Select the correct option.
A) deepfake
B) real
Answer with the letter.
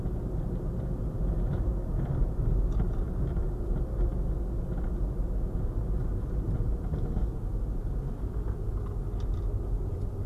B